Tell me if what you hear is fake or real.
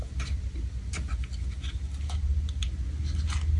real